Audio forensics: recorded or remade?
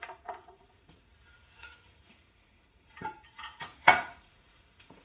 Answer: remade